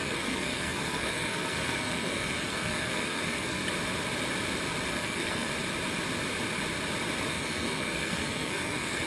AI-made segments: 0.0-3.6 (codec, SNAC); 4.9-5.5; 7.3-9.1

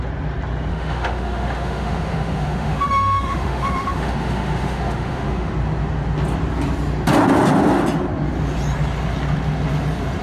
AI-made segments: 0.7-5.5 (autoencoder, DAC-VAE)

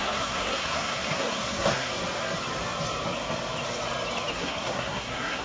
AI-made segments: 0.0-1.9 (codec, SNAC); 4.3-5.4

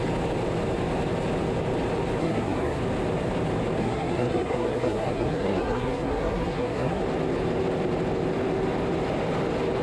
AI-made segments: 2.2-2.8 (codec, SNAC); 3.8-7.0

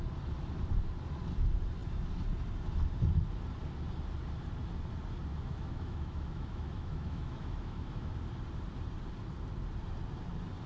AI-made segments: 5.3-8.1 (autoencoder, DAC-VAE)

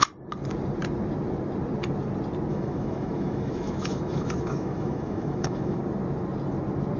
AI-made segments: 2.5-5.8 (autoencoder, DAC-VAE)

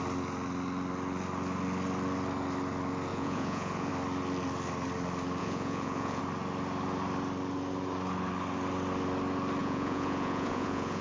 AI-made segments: 3.1-3.9 (vocoder, Vocos); 5.4-6.2; 9.6-11.0

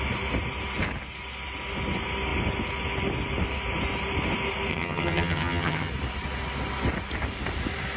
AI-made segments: 4.7-5.9 (vocoder, HiFi-GAN)